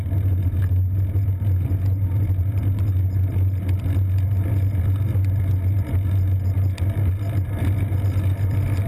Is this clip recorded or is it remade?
recorded